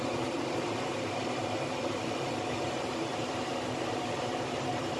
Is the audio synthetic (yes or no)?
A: yes